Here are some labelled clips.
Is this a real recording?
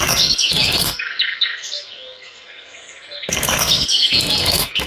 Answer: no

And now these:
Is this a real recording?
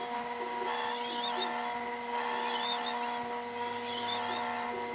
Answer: yes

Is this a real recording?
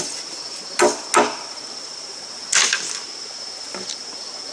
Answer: yes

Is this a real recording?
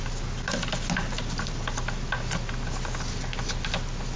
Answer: yes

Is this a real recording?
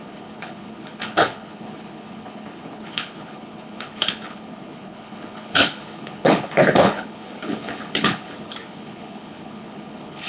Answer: no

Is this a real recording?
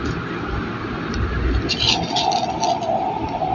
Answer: yes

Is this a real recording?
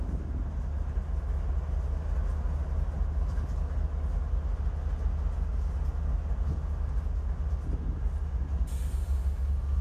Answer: yes